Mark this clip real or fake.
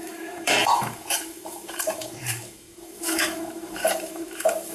fake